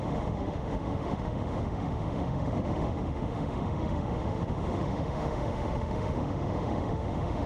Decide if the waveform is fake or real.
fake